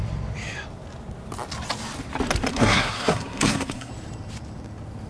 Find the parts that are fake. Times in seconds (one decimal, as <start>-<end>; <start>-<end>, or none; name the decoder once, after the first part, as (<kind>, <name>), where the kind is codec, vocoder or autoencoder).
2.5-3.9 (codec, SNAC)